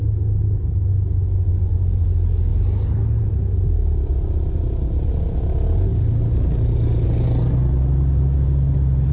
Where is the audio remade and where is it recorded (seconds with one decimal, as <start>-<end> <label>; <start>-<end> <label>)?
0.0-9.1 recorded